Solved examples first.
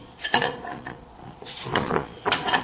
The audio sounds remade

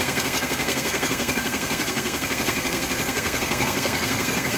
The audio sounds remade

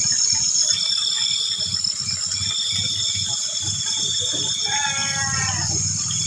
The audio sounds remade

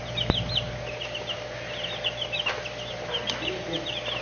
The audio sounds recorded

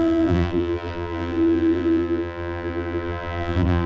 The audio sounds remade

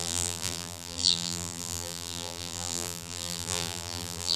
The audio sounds remade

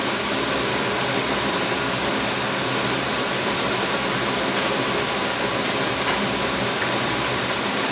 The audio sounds recorded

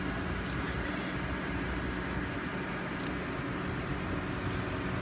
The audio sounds recorded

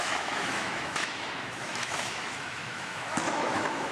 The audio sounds remade